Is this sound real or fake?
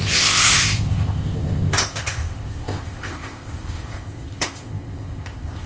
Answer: fake